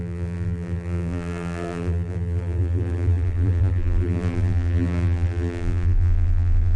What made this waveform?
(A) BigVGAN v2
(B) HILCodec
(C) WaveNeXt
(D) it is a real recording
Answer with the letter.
A